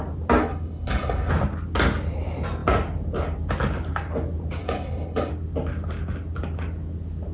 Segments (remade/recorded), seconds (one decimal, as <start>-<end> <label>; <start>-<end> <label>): 0.0-0.4 recorded; 0.4-1.3 remade; 1.3-4.6 recorded; 4.6-5.3 remade; 5.3-7.3 recorded